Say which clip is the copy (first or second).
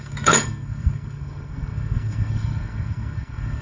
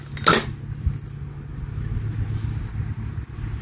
first